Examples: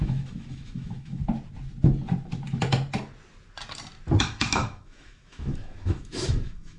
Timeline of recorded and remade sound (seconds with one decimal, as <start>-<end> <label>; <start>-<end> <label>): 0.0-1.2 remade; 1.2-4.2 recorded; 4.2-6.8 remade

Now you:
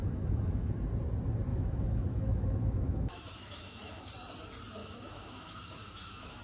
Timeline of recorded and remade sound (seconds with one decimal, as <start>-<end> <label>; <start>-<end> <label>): 0.0-0.7 remade; 0.7-1.5 recorded; 1.5-4.1 remade; 4.1-4.8 recorded; 4.8-6.4 remade

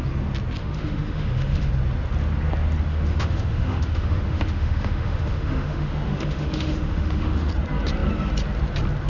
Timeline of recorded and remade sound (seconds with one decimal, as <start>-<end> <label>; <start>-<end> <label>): 0.0-0.6 recorded; 0.6-1.7 remade; 1.7-2.9 recorded; 2.9-7.5 remade; 7.5-9.1 recorded